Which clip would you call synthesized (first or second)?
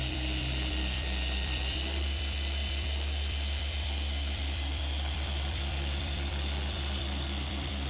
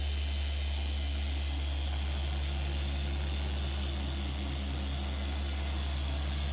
first